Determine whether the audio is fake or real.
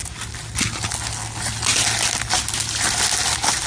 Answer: real